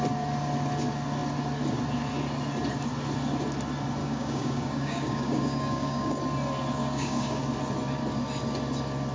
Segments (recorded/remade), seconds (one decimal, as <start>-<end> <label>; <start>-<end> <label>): 0.0-4.0 recorded; 4.0-6.1 remade; 6.1-6.8 recorded; 6.8-7.4 remade; 7.4-9.1 recorded